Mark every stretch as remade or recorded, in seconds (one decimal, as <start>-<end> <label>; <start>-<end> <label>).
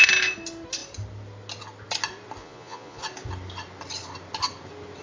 0.0-2.4 recorded; 2.4-3.0 remade; 3.0-5.0 recorded